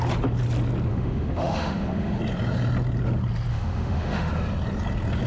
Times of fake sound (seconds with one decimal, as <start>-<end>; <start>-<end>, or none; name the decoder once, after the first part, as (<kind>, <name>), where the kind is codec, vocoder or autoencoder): 0.9-2.2 (autoencoder, DAC-VAE); 3.5-4.3